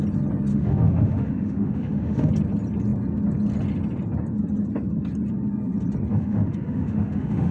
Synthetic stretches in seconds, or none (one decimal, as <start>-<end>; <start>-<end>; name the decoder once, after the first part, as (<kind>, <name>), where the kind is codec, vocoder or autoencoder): 0.5-2.3 (autoencoder, DAC-VAE); 6.1-7.5